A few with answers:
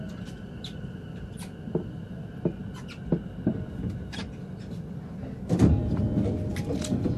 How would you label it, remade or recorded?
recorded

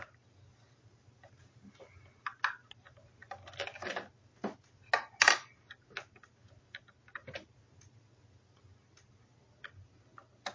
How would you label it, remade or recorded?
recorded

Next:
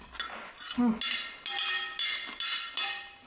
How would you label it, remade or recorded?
recorded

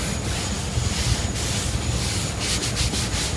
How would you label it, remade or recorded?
recorded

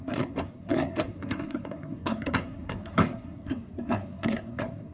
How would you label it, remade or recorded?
remade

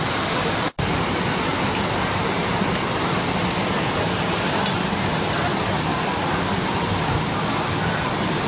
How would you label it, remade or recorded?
recorded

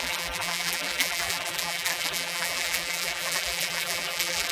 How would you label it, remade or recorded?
remade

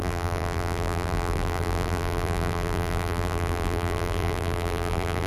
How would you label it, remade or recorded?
remade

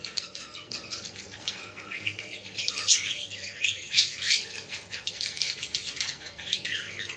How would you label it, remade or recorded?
remade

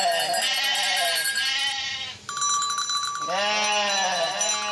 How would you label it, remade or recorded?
recorded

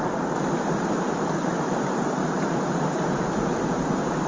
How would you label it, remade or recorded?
remade